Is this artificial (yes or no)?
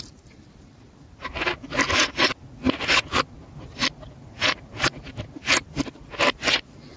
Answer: no